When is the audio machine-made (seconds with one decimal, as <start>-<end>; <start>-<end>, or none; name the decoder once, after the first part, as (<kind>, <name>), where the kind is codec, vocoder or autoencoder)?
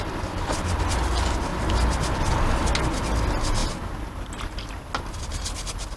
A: none